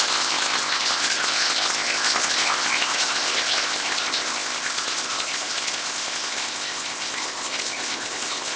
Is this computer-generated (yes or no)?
yes